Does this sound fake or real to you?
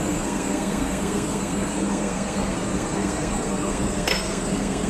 fake